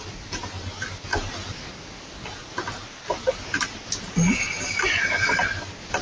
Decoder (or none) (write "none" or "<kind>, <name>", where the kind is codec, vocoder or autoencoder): none